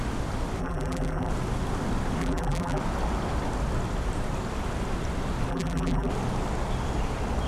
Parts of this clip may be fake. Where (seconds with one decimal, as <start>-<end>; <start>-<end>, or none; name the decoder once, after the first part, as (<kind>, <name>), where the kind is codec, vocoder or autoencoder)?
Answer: 0.6-1.3 (vocoder, BigVGAN v2); 2.2-2.8; 5.5-6.1